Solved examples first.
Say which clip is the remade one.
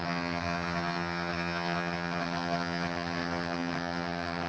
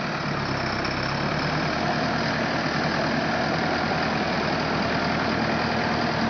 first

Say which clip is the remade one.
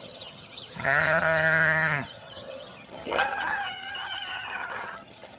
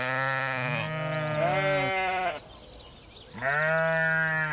first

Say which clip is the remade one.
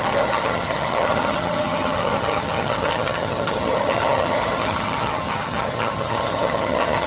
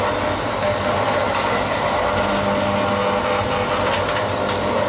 first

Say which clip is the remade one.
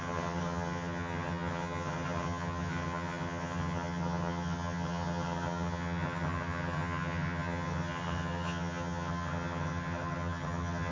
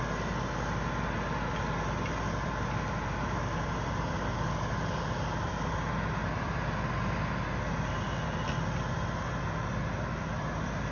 first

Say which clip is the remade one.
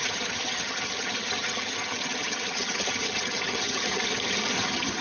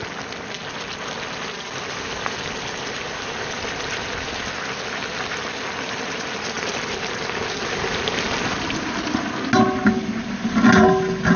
first